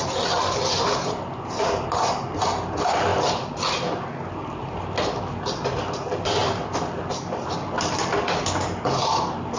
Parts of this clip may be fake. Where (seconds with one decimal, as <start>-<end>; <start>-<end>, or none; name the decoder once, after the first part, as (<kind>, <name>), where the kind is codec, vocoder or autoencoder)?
none